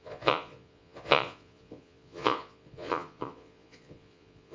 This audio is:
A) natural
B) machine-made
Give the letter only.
B